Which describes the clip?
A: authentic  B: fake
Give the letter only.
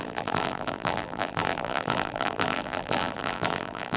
B